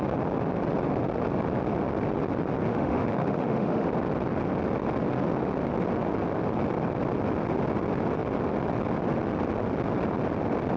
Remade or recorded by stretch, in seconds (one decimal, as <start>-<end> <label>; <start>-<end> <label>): 0.0-2.7 recorded; 2.7-3.9 remade; 3.9-10.8 recorded